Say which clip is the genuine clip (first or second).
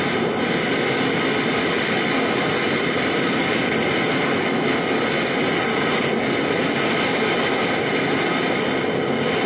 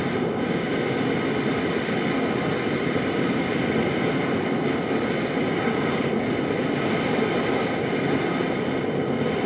first